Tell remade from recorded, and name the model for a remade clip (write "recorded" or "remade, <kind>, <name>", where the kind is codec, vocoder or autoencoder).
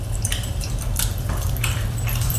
remade, vocoder, BigVGAN v2